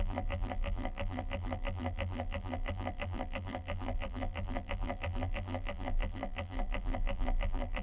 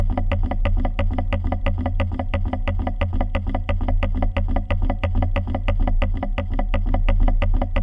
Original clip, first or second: second